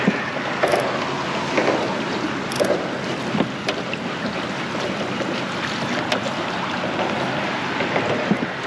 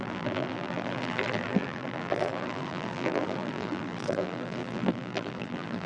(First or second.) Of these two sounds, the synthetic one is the second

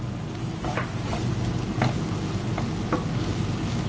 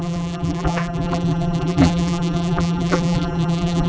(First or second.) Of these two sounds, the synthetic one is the second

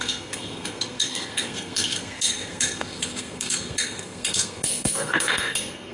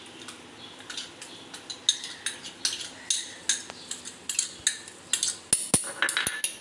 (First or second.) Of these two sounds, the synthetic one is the first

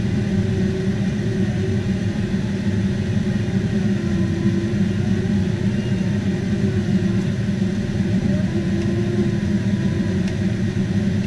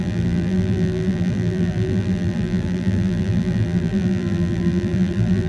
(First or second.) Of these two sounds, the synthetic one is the second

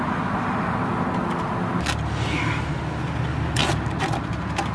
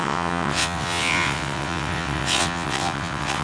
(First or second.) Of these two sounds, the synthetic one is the second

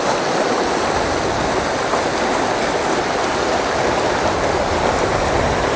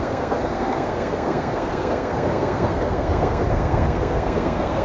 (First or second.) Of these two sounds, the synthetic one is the second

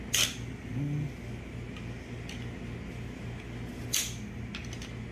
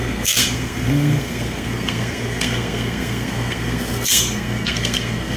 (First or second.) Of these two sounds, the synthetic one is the second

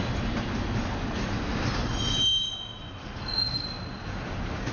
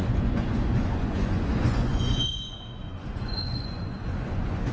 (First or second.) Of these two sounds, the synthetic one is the second